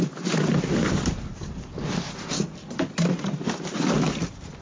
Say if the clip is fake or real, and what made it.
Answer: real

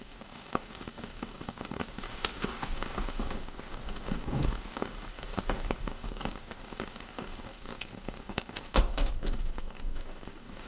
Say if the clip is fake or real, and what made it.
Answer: fake, codec, DAC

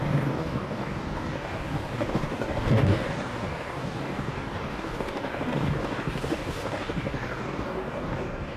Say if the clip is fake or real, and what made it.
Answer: fake, codec, DAC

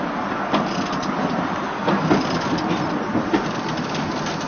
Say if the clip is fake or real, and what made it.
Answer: real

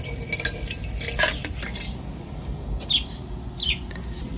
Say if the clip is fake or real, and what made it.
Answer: real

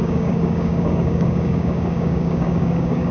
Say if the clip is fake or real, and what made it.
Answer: fake, codec, DAC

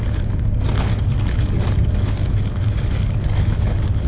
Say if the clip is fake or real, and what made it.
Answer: fake, codec, DAC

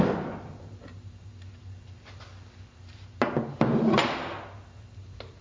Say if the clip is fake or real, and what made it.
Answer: real